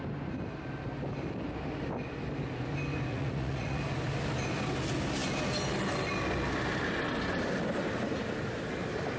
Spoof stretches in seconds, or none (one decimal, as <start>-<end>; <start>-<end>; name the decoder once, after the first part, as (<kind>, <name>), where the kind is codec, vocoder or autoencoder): 3.1-3.8 (vocoder, Vocos)